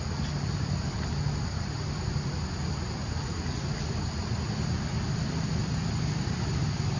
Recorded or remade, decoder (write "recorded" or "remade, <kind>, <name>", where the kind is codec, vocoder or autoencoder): recorded